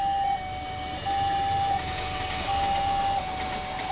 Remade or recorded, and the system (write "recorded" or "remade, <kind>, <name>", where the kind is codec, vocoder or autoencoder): recorded